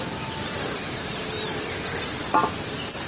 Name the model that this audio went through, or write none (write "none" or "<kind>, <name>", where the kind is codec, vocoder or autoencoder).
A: none